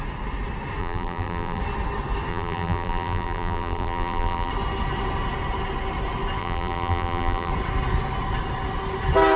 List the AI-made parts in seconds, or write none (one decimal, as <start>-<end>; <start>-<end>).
0.8-1.6; 2.3-4.5; 6.4-7.5